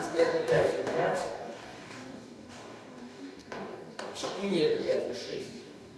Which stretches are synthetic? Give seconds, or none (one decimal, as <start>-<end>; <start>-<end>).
0.0-6.0